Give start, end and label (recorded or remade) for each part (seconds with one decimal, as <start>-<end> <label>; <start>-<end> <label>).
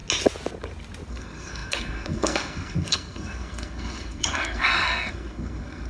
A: 0.0-1.1 recorded; 1.1-5.9 remade